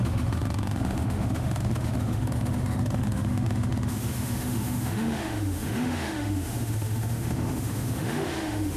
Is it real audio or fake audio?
fake